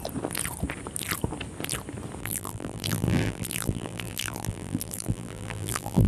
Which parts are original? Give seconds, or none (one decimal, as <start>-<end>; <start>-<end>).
0.0-2.2